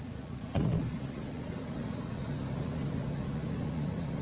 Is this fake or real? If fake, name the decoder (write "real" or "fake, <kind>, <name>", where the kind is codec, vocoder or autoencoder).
fake, vocoder, Vocos